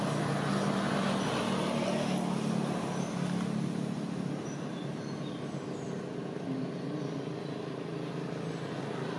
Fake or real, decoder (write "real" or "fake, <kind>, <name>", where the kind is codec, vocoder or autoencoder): real